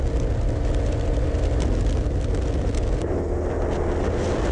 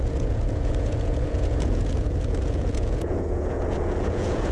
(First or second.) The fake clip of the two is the second